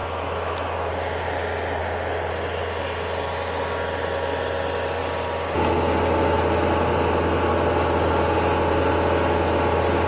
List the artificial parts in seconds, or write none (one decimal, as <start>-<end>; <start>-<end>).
0.0-0.9